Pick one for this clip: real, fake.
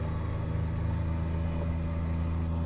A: real